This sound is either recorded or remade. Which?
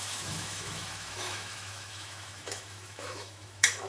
remade